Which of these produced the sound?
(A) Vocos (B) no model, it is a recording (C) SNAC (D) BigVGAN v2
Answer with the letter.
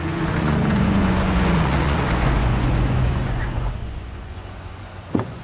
A